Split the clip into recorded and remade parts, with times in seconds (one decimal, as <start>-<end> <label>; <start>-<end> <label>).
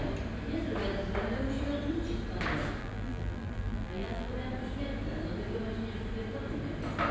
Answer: 0.0-2.8 recorded; 2.8-4.3 remade; 4.3-7.1 recorded